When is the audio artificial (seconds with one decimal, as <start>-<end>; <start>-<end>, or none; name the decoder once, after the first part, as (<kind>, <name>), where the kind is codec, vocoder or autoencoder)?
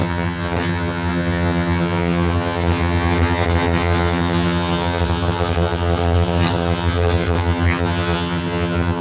0.0-9.0 (vocoder, HiFi-GAN)